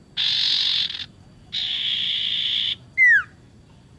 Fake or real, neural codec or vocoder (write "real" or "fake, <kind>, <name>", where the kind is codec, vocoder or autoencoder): real